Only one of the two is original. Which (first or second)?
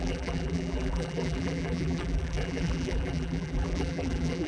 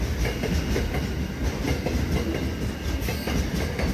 second